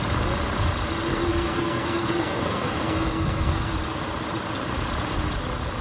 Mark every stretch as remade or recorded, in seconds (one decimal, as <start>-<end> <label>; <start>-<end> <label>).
0.0-1.1 recorded; 1.1-3.7 remade; 3.7-5.8 recorded